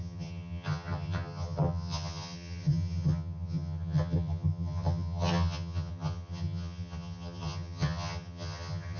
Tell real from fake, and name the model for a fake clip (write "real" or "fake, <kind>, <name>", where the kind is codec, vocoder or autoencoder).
fake, vocoder, HiFi-GAN